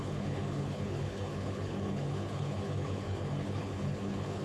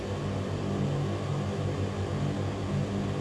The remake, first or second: first